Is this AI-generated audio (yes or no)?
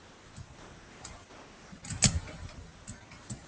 no